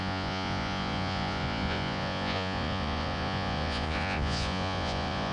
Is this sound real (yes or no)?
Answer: no